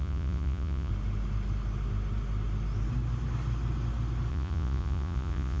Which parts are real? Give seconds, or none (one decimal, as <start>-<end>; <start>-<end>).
0.9-4.3